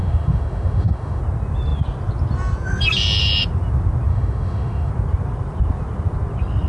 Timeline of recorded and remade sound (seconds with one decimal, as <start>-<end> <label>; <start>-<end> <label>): 0.0-1.2 remade; 1.2-4.1 recorded; 4.1-4.9 remade; 4.9-6.7 recorded